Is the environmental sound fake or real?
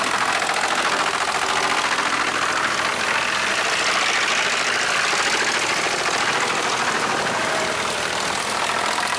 real